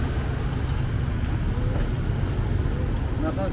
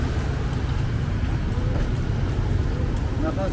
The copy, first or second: second